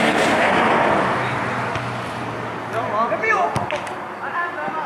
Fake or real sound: real